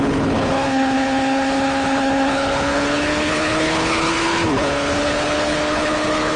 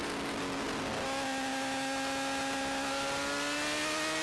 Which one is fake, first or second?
first